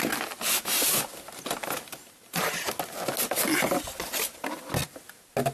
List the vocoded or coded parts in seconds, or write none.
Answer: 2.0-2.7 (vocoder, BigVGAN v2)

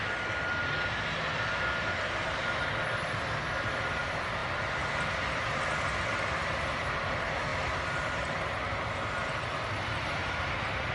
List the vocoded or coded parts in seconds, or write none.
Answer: none

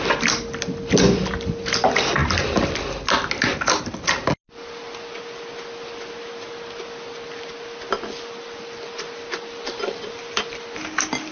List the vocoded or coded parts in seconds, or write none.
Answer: none

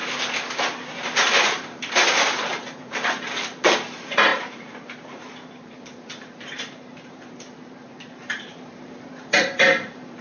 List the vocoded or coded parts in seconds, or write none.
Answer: 1.0-10.2 (vocoder, BigVGAN v2)

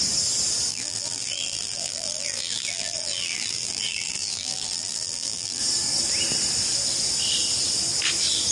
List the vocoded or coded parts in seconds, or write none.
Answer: 0.7-5.6 (vocoder, BigVGAN v2)